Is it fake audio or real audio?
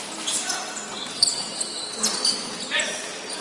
real